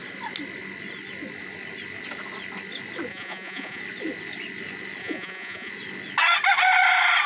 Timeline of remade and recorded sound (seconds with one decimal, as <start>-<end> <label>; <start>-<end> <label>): 0.0-3.1 recorded; 3.1-3.8 remade; 3.8-5.0 recorded; 5.0-5.7 remade; 5.7-7.3 recorded